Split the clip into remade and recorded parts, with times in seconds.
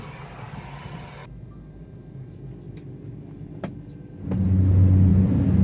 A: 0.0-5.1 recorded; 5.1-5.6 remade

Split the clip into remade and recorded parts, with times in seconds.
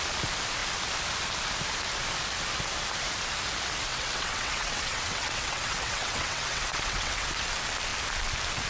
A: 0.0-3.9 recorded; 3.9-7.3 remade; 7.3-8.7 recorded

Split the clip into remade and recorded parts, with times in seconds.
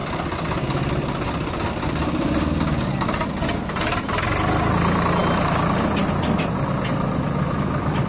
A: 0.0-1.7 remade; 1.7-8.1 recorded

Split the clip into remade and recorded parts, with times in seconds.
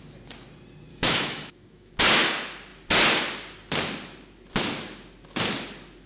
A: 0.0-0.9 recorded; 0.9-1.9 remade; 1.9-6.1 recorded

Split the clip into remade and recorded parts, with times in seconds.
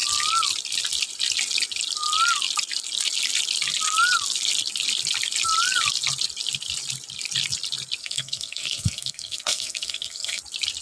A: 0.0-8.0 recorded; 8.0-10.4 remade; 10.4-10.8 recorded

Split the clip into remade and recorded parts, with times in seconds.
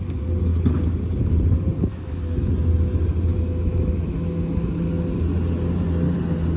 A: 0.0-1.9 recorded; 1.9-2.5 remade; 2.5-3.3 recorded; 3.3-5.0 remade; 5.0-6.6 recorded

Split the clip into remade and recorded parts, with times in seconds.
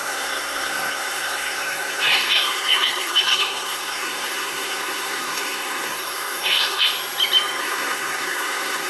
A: 0.0-6.9 remade; 6.9-7.6 recorded; 7.6-8.9 remade